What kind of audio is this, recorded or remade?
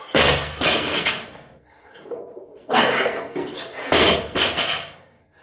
remade